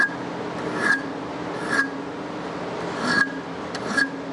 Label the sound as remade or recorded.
recorded